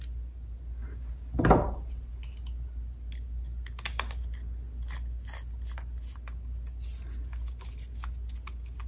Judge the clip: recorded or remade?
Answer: recorded